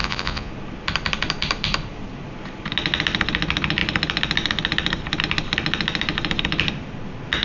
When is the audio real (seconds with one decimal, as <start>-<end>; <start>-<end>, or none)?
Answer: 0.5-7.4